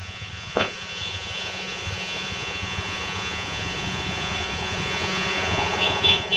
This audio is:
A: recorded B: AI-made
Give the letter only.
B